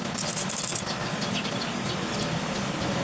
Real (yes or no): yes